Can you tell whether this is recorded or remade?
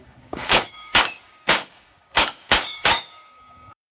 remade